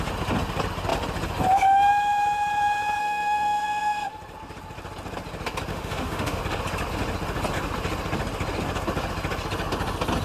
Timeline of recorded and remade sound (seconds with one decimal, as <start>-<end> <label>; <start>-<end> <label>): 0.0-3.0 recorded; 3.0-4.1 remade; 4.1-5.7 recorded; 5.7-6.4 remade; 6.4-10.2 recorded